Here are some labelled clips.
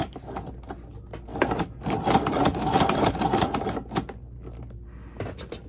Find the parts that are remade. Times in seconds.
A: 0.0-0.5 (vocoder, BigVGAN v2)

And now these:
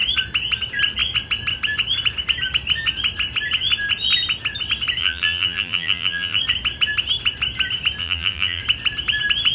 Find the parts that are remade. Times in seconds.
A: 5.0-6.4 (vocoder, BigVGAN v2); 8.0-8.6